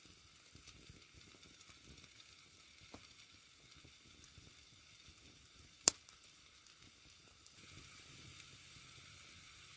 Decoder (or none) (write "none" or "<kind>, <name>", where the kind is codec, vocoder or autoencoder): none